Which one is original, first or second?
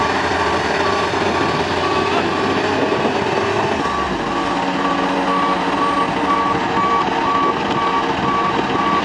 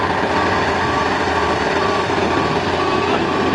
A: first